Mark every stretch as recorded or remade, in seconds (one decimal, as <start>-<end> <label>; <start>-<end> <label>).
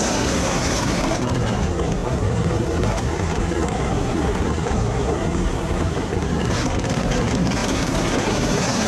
0.0-8.9 remade